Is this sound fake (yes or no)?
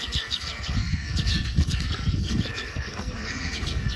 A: yes